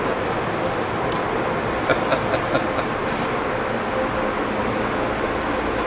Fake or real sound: real